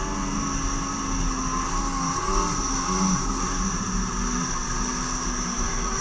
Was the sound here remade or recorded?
recorded